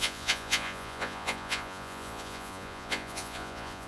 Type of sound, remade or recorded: remade